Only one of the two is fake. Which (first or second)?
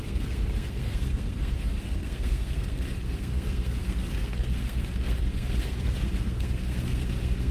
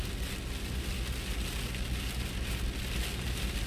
first